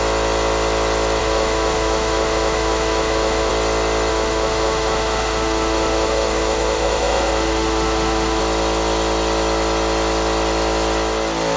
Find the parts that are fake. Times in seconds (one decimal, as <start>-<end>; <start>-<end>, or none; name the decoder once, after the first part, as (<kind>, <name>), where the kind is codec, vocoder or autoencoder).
1.2-3.5 (autoencoder, DAC-VAE); 4.1-8.4